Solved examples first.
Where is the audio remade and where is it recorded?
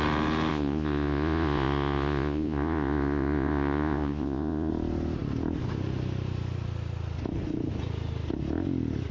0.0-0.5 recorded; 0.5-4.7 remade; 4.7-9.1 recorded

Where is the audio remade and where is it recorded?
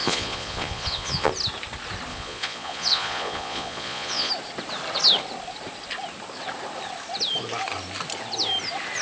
0.0-1.3 remade; 1.3-2.1 recorded; 2.1-4.3 remade; 4.3-9.0 recorded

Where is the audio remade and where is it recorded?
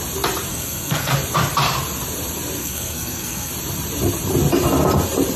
0.0-0.5 recorded; 0.5-1.1 remade; 1.1-2.6 recorded; 2.6-3.5 remade; 3.5-5.4 recorded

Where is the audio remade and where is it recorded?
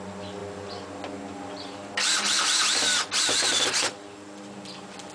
0.0-5.1 recorded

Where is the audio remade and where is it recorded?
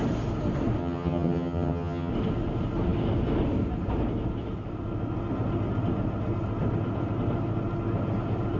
0.0-0.8 recorded; 0.8-2.1 remade; 2.1-8.6 recorded